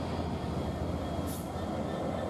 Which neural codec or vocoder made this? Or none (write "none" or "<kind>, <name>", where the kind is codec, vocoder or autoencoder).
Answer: none